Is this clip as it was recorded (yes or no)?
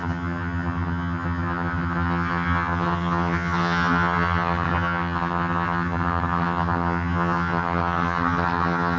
no